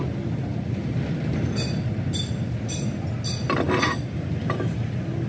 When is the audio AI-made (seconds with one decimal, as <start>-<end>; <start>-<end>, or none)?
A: none